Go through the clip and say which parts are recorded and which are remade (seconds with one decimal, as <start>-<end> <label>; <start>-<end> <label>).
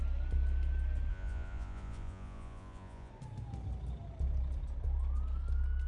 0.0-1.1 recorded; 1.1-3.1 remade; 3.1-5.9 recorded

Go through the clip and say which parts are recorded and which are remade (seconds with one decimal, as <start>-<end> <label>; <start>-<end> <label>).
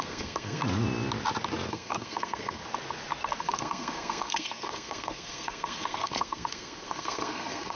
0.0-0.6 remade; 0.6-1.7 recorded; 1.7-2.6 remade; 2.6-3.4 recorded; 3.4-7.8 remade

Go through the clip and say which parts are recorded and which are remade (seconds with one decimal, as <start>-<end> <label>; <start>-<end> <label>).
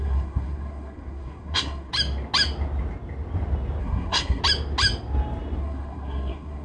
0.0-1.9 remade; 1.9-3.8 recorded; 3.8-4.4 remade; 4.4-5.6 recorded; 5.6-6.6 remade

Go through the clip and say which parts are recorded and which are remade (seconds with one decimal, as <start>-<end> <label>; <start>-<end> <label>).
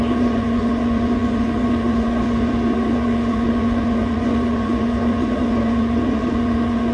0.0-6.9 remade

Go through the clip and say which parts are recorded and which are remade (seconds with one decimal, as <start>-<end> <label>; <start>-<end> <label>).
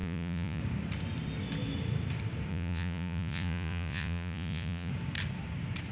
0.0-0.6 remade; 0.6-2.5 recorded; 2.5-4.9 remade; 4.9-5.9 recorded